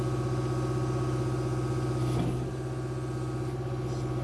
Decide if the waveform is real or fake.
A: real